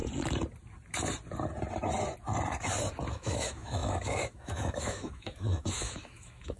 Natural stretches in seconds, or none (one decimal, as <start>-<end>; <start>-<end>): 0.0-3.1